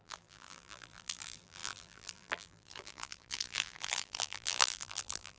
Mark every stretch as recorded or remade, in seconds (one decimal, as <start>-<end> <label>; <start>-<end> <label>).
0.0-5.4 remade